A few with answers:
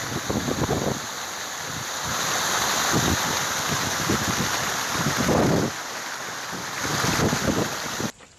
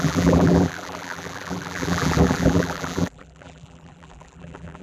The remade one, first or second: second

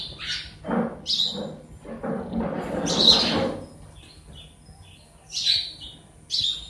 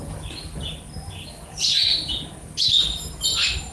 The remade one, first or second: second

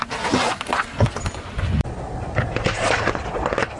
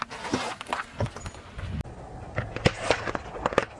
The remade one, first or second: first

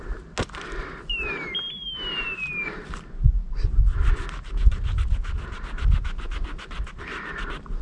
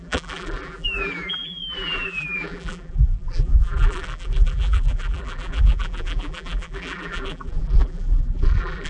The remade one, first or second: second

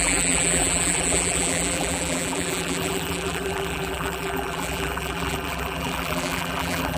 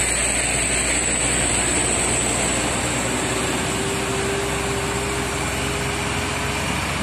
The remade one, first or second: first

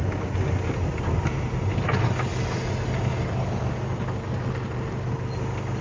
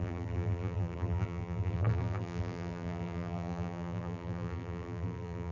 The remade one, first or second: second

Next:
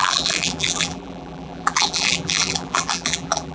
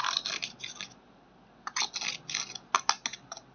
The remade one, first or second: first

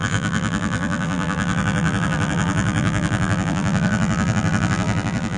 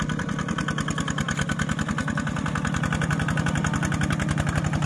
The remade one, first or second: first